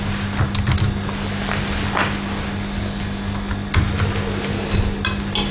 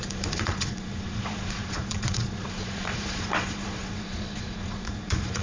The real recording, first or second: first